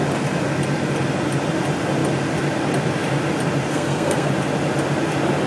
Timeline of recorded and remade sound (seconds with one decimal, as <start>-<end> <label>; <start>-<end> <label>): 0.0-3.7 recorded; 3.7-4.3 remade; 4.3-5.5 recorded